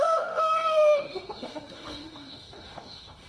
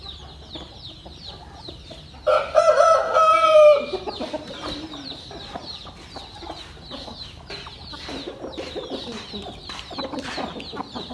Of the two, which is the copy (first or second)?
first